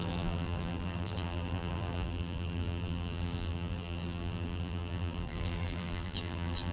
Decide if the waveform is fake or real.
fake